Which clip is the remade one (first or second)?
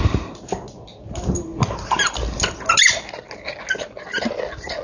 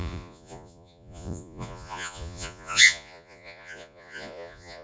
second